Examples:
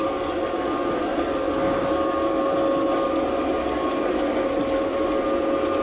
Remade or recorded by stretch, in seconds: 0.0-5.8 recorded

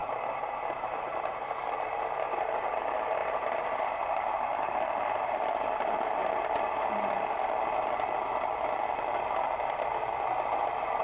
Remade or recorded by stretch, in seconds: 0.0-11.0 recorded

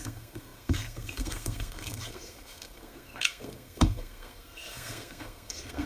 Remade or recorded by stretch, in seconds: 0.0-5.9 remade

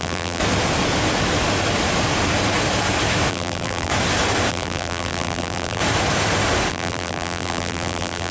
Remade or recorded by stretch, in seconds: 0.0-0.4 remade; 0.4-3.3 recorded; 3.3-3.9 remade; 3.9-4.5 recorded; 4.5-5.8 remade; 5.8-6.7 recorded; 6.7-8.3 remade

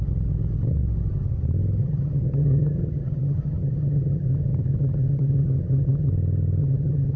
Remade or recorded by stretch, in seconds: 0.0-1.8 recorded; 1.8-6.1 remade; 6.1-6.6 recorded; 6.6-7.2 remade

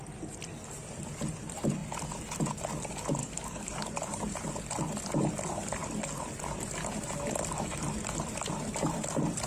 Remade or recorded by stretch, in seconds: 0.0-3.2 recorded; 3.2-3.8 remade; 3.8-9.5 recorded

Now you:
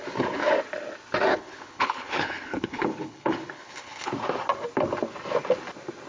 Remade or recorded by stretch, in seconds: 0.0-1.3 recorded; 1.3-4.1 remade; 4.1-6.1 recorded

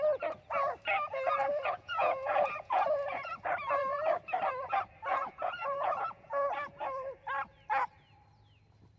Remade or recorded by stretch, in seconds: 0.0-1.4 recorded; 1.4-3.3 remade; 3.3-5.1 recorded; 5.1-6.8 remade; 6.8-9.0 recorded